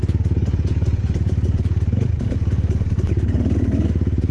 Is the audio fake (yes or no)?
no